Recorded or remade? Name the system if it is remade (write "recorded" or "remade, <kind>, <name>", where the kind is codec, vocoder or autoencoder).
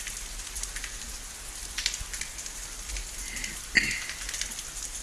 recorded